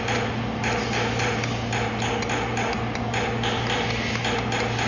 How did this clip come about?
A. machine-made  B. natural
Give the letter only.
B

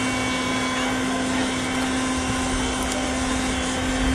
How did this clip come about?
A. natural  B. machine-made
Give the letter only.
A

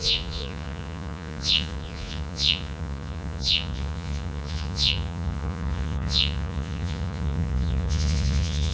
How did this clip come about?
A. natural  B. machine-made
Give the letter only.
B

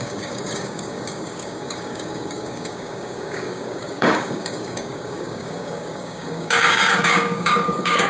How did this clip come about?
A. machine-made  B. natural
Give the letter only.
A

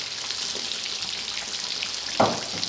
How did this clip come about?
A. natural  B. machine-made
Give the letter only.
A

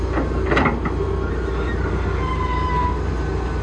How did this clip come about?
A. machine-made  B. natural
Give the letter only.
B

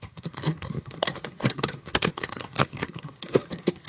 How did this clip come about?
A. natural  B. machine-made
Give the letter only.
B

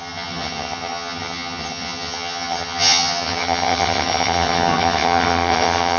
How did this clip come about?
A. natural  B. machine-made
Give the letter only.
B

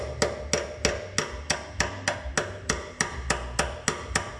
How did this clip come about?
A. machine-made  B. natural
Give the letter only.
B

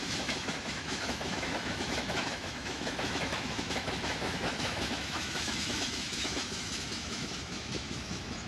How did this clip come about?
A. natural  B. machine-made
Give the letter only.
B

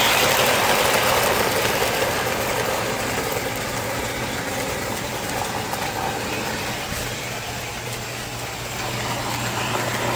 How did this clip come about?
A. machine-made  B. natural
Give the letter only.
B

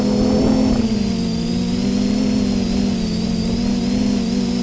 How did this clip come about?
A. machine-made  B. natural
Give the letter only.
B